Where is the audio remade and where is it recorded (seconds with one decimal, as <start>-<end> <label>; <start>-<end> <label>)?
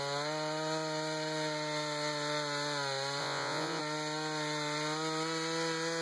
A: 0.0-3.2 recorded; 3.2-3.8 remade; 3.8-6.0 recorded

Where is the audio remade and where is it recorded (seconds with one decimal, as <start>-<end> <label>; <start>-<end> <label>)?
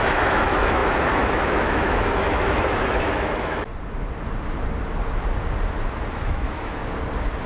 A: 0.0-3.7 remade; 3.7-6.1 recorded; 6.1-6.8 remade; 6.8-7.5 recorded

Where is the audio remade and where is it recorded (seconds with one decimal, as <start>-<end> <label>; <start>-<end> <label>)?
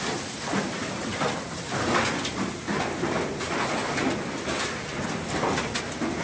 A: 0.0-0.8 recorded; 0.8-1.7 remade; 1.7-3.8 recorded; 3.8-5.3 remade; 5.3-6.2 recorded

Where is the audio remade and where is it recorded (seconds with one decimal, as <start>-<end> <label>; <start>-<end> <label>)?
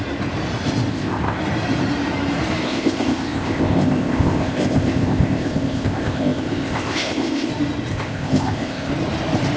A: 0.0-0.9 recorded; 0.9-1.4 remade; 1.4-2.6 recorded; 2.6-7.5 remade; 7.5-7.9 recorded; 7.9-8.9 remade; 8.9-9.6 recorded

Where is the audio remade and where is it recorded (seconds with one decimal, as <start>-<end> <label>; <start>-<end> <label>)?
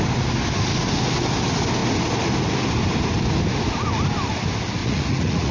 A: 0.0-4.8 recorded; 4.8-5.5 remade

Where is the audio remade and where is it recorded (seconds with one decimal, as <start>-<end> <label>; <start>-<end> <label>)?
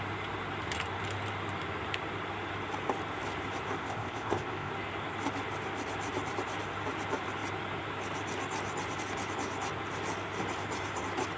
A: 0.0-3.8 recorded; 3.8-4.7 remade; 4.7-11.4 recorded